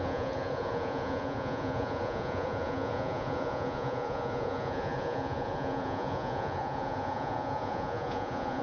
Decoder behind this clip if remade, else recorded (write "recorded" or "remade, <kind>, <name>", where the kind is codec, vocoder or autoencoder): remade, vocoder, Vocos